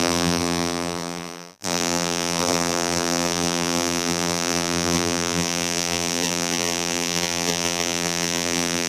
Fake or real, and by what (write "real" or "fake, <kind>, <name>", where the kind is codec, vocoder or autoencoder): fake, vocoder, BigVGAN v2